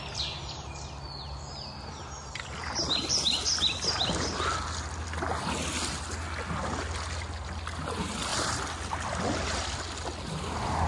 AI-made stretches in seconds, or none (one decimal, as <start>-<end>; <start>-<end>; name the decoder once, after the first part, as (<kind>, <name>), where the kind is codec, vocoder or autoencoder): 8.3-9.8 (vocoder, BigVGAN v2)